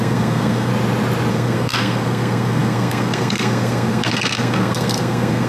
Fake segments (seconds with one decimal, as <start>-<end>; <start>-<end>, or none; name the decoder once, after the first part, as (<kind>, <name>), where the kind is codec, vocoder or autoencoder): 0.0-0.7 (codec, SNAC); 1.3-5.5